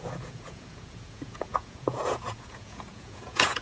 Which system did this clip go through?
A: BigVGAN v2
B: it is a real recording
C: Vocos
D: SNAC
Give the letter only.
C